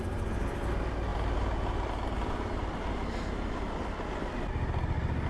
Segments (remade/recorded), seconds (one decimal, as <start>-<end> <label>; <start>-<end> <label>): 0.0-5.3 recorded